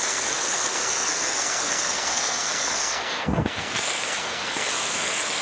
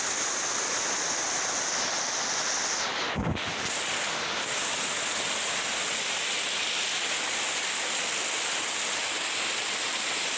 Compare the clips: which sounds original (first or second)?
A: second